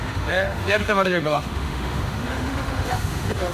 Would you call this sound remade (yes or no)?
yes